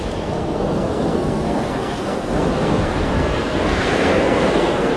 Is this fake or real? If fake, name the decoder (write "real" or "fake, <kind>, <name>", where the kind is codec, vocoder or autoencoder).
fake, codec, SNAC